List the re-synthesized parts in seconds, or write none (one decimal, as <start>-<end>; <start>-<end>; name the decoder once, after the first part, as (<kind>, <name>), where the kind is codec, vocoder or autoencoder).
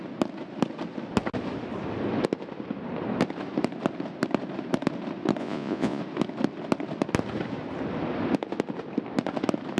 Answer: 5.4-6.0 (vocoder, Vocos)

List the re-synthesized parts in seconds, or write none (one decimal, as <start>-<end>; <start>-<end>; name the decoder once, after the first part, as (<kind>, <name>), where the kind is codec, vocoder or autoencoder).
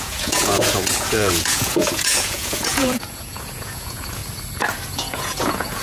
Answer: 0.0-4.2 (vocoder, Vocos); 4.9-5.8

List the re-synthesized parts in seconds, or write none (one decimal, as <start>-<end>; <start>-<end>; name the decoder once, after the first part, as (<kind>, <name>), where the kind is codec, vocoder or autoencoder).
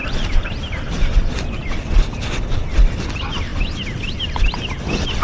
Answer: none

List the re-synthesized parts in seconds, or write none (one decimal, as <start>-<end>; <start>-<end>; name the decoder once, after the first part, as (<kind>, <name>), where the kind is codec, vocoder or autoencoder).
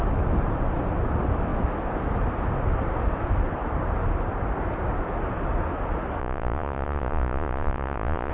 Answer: 6.2-8.3 (vocoder, Vocos)